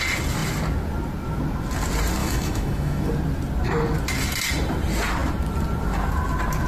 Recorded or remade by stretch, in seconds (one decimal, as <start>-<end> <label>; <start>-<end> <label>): 0.0-2.2 recorded; 2.2-3.1 remade; 3.1-6.7 recorded